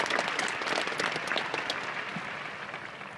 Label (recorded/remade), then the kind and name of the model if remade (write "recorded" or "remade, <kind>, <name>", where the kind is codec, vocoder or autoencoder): recorded